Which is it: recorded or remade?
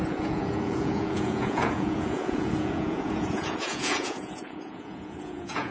remade